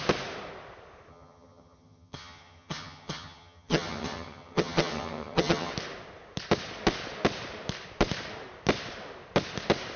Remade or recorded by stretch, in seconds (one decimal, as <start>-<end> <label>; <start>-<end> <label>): 0.0-1.1 recorded; 1.1-5.7 remade; 5.7-10.0 recorded